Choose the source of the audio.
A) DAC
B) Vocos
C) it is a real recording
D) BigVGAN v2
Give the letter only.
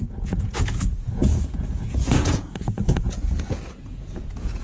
B